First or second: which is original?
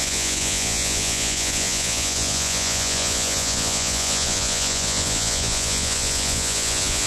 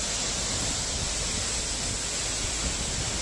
second